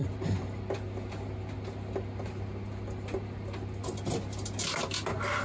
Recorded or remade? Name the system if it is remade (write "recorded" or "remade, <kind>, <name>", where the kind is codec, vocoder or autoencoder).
recorded